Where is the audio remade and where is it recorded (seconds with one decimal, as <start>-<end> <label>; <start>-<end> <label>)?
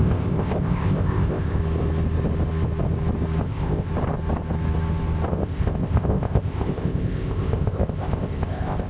0.0-1.6 remade; 1.6-3.4 recorded; 3.4-3.9 remade; 3.9-5.3 recorded; 5.3-8.9 remade